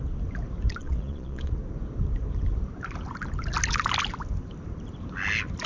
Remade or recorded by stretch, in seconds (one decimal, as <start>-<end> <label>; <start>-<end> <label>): 0.0-0.8 recorded; 0.8-1.5 remade; 1.5-5.7 recorded